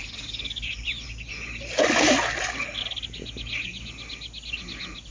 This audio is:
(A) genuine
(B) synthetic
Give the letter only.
A